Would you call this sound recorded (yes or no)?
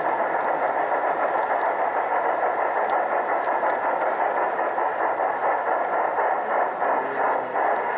yes